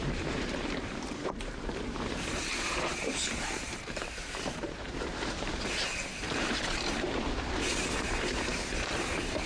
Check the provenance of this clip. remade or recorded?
remade